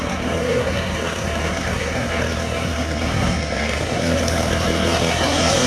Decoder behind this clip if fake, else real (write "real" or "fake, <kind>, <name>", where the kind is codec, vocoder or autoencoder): fake, codec, SNAC